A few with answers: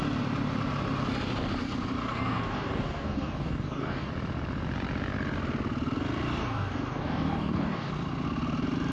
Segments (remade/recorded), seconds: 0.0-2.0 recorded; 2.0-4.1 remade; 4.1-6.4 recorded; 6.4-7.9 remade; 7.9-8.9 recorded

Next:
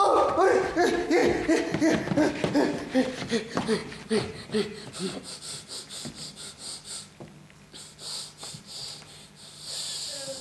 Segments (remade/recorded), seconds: 0.0-10.4 recorded

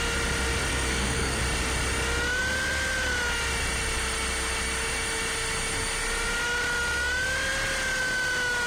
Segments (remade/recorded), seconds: 0.0-0.7 recorded; 0.7-1.4 remade; 1.4-8.7 recorded

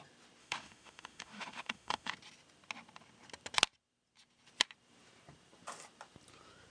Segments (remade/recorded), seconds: 0.0-0.4 recorded; 0.4-2.1 remade; 2.1-6.7 recorded

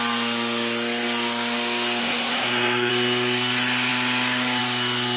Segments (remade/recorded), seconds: 0.0-2.0 recorded; 2.0-2.9 remade; 2.9-5.2 recorded

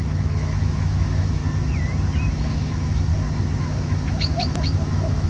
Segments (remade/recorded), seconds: 0.0-1.4 remade; 1.4-2.3 recorded; 2.3-3.1 remade; 3.1-3.6 recorded; 3.6-5.3 remade

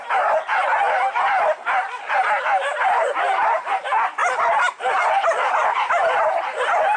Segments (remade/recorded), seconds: 0.0-7.0 recorded

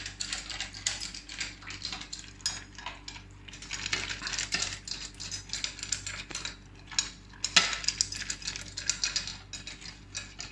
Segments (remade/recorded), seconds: 0.0-10.5 recorded